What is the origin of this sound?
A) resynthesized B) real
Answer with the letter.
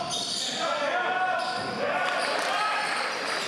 B